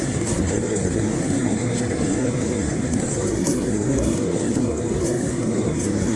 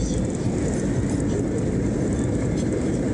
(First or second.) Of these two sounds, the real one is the second